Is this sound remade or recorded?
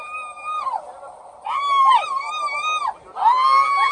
recorded